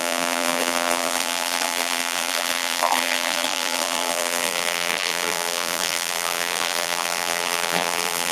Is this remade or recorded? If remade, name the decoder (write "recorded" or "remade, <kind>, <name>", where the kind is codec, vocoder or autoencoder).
remade, vocoder, BigVGAN v2